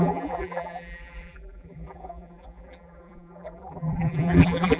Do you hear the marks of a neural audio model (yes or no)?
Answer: yes